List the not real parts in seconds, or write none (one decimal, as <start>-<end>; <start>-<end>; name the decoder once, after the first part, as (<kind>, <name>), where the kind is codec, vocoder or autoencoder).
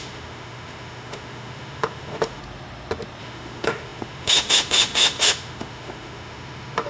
0.0-2.4 (autoencoder, DAC-VAE); 3.2-6.9